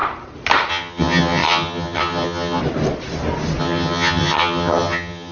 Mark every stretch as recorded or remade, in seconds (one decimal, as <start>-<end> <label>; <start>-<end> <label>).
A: 0.0-0.7 recorded; 0.7-2.6 remade; 2.6-3.6 recorded; 3.6-5.3 remade

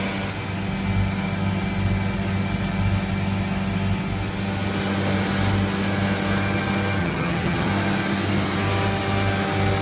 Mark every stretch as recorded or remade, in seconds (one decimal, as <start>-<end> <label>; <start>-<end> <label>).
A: 0.0-7.0 recorded; 7.0-7.7 remade; 7.7-9.8 recorded

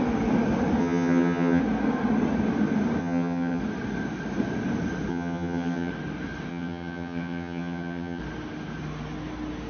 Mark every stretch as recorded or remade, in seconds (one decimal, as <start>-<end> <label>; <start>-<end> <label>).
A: 0.0-0.8 recorded; 0.8-1.6 remade; 1.6-3.0 recorded; 3.0-3.6 remade; 3.6-5.1 recorded; 5.1-5.9 remade; 5.9-6.5 recorded; 6.5-8.2 remade; 8.2-9.7 recorded

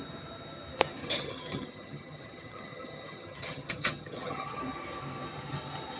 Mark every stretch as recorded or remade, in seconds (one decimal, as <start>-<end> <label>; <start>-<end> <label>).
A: 0.0-1.0 recorded; 1.0-4.6 remade; 4.6-6.0 recorded

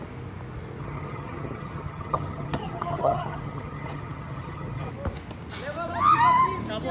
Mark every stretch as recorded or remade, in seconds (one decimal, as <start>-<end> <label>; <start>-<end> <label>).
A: 0.0-0.8 recorded; 0.8-4.9 remade; 4.9-6.9 recorded

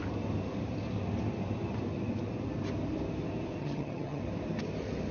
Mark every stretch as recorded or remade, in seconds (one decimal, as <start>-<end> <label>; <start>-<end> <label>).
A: 0.0-3.6 recorded; 3.6-4.2 remade; 4.2-5.1 recorded

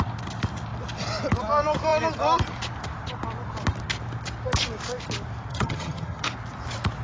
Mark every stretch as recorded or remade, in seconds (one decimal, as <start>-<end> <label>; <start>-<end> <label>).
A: 0.0-5.5 recorded; 5.5-6.2 remade; 6.2-7.0 recorded

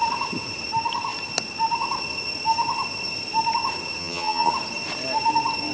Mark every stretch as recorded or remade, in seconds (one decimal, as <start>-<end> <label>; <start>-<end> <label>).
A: 0.0-4.0 recorded; 4.0-4.5 remade; 4.5-5.7 recorded